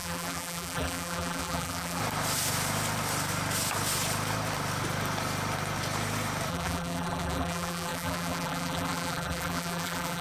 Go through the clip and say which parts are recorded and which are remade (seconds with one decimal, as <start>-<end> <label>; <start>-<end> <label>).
0.0-2.0 remade; 2.0-6.5 recorded; 6.5-10.2 remade